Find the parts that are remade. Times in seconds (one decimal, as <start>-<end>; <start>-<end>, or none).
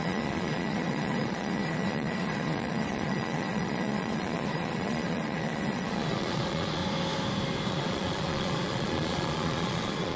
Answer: 0.0-6.8; 7.7-10.2